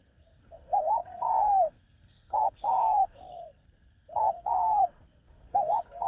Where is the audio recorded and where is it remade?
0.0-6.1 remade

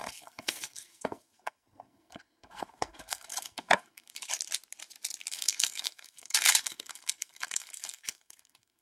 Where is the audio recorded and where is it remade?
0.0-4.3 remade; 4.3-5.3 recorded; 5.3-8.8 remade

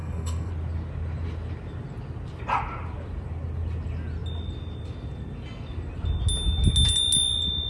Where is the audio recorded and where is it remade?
0.0-0.5 remade; 0.5-7.7 recorded